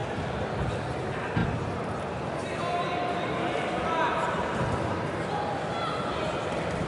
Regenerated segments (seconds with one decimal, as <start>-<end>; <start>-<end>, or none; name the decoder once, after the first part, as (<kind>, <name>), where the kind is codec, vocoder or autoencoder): none